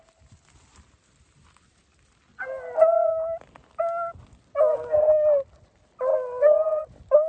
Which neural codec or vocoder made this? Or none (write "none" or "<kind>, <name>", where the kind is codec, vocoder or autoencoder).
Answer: none